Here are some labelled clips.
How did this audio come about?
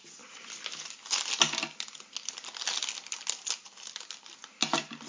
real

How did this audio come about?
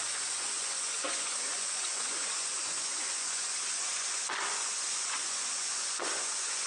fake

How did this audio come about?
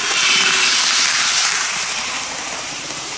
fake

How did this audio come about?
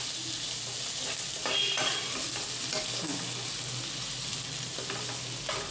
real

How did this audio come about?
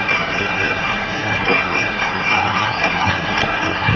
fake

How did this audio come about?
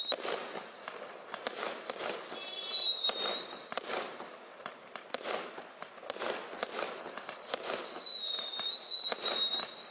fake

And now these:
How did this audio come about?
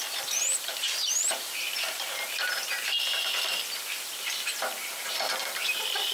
fake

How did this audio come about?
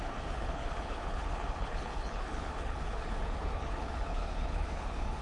fake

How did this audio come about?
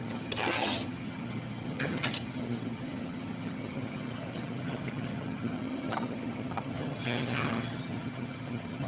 fake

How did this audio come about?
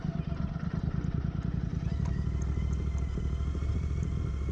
real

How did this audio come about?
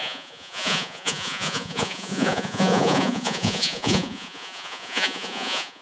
fake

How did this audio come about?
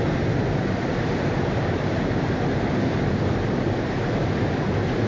real